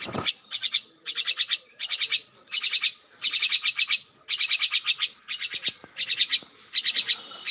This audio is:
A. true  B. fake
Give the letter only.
A